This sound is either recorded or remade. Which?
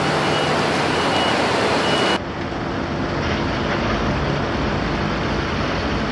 recorded